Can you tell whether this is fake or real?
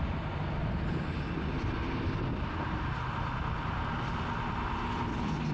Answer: real